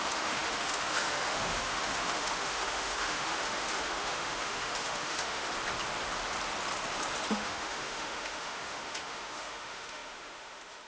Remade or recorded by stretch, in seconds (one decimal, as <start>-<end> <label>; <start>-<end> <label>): 0.0-5.5 remade; 5.5-7.3 recorded; 7.3-10.9 remade